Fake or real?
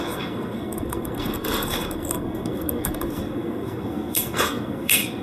fake